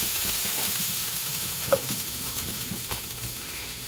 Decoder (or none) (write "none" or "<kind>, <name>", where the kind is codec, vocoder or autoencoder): autoencoder, DAC-VAE